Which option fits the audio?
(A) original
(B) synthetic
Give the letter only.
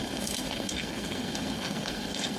B